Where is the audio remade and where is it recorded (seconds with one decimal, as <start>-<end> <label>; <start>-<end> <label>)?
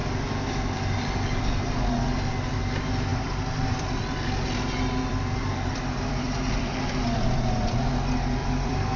0.0-3.1 recorded; 3.1-7.9 remade; 7.9-8.4 recorded; 8.4-9.0 remade